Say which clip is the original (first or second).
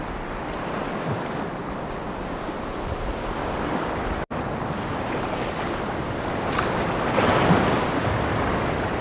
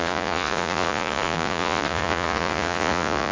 first